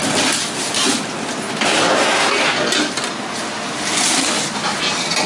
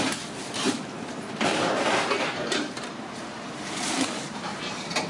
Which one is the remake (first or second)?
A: second